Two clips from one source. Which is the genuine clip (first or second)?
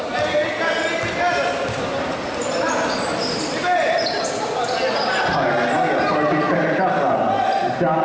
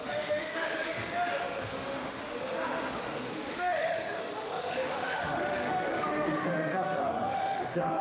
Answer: first